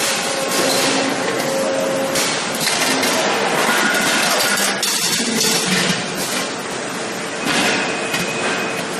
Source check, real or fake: real